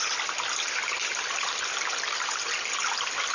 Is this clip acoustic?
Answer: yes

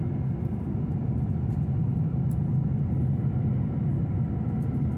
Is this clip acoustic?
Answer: yes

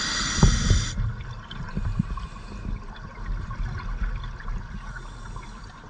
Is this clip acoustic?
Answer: yes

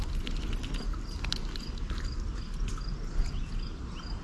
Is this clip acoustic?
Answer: yes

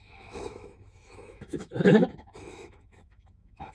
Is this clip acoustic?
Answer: no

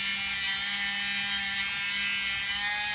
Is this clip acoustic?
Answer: yes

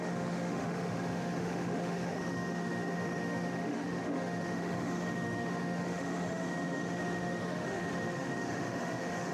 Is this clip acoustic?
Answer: no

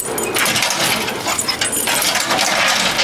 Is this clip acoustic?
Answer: yes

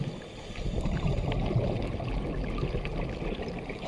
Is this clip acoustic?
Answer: yes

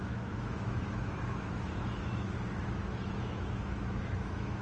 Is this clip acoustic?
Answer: no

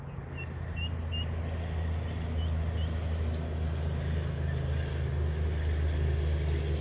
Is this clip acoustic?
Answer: yes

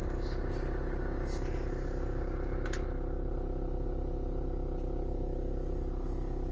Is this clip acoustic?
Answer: yes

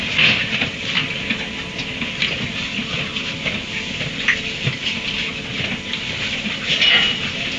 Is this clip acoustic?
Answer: yes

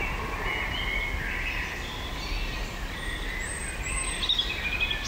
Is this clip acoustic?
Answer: yes